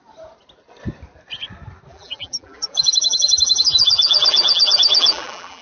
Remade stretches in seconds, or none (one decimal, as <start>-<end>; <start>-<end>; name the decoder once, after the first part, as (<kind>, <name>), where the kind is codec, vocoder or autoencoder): 1.9-5.6 (vocoder, BigVGAN v2)